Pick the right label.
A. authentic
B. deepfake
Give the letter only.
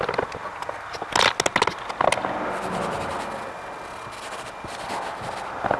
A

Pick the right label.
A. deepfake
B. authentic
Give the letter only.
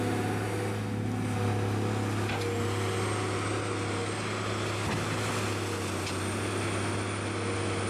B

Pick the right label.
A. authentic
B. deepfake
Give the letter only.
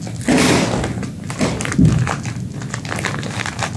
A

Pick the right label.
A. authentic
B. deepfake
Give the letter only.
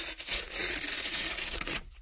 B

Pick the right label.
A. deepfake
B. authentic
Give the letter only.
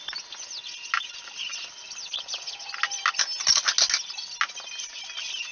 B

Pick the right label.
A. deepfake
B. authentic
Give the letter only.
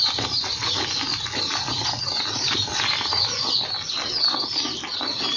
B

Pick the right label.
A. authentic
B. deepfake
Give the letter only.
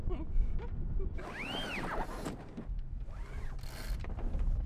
A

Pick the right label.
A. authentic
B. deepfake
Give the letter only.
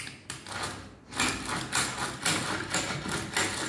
A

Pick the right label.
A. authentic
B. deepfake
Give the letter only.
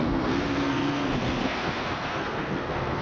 B